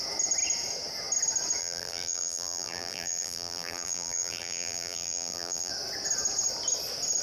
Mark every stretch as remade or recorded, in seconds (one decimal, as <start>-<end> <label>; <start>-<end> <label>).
0.0-1.6 recorded; 1.6-5.7 remade; 5.7-7.2 recorded